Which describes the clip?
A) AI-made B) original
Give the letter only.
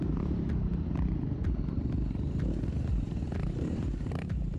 A